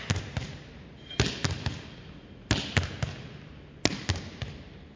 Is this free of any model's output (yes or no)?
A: yes